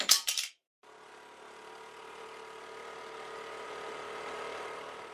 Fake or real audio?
fake